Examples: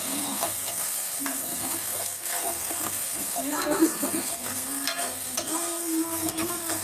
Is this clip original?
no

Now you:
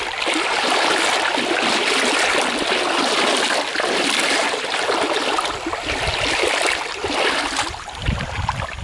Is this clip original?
yes